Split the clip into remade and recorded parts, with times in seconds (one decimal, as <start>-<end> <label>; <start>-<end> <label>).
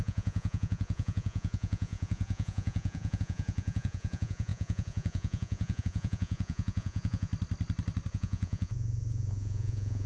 0.0-7.3 remade; 7.3-8.1 recorded; 8.1-10.1 remade